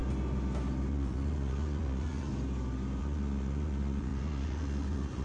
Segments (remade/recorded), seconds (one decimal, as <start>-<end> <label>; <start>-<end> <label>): 0.0-0.9 recorded; 0.9-2.3 remade; 2.3-3.0 recorded; 3.0-5.2 remade